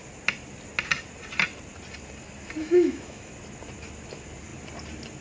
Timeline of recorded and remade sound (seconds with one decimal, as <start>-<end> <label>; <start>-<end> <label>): 0.0-2.6 recorded; 2.6-3.3 remade; 3.3-5.2 recorded